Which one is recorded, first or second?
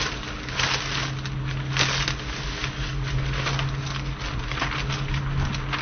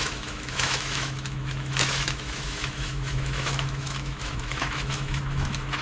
first